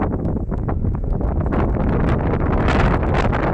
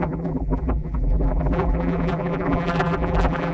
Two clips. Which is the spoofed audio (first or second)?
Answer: second